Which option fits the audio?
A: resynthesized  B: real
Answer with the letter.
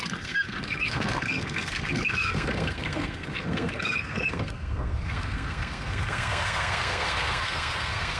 A